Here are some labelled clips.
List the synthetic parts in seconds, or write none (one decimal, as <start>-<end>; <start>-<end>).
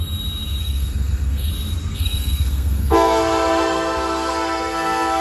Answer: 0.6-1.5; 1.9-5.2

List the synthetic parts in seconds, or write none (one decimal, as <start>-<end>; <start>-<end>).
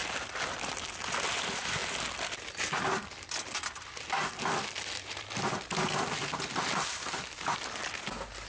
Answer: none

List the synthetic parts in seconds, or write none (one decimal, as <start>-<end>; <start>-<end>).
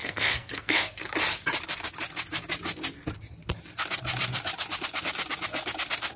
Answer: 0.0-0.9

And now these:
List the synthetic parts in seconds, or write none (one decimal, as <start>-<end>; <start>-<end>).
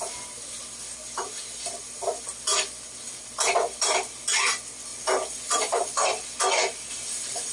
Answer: none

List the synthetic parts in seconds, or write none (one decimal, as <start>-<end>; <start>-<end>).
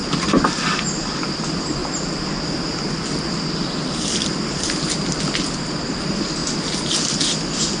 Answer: none